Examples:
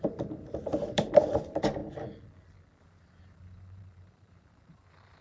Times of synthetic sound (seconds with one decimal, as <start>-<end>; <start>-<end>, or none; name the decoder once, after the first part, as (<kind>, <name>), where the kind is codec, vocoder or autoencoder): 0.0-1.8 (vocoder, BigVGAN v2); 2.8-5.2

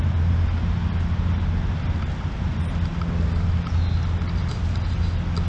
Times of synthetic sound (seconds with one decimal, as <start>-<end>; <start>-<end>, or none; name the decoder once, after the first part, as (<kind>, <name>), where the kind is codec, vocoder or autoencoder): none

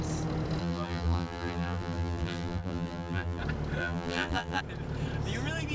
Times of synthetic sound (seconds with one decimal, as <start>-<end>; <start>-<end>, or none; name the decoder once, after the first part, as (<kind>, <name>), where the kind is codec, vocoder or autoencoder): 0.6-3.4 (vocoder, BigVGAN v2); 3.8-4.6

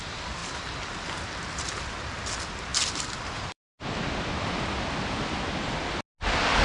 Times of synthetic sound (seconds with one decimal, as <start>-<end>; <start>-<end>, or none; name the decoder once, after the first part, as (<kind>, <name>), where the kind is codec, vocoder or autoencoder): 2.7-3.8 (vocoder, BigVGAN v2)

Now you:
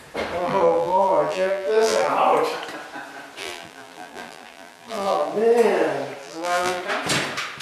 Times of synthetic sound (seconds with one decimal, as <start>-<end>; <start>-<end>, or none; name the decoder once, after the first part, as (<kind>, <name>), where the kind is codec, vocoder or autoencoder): 0.4-2.1 (vocoder, BigVGAN v2); 3.4-5.3; 6.2-6.8